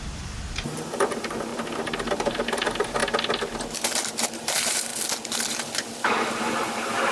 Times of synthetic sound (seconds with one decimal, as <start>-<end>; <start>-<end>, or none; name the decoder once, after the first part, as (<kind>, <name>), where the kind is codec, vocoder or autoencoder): 0.0-1.5 (vocoder, BigVGAN v2); 2.0-3.0; 4.1-4.9; 6.4-7.1